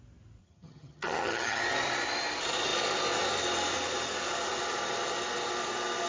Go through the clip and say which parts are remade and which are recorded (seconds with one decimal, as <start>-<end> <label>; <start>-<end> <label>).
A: 0.0-0.4 recorded; 0.4-1.6 remade; 1.6-6.1 recorded